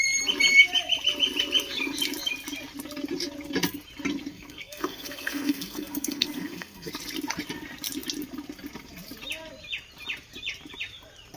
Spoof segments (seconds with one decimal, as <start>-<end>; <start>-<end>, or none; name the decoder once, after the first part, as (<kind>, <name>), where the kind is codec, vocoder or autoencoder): 4.3-6.9 (codec, SNAC)